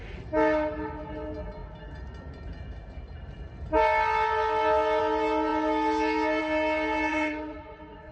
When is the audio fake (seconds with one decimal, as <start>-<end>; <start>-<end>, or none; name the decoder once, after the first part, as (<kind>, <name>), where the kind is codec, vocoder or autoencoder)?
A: 7.1-8.1 (vocoder, Vocos)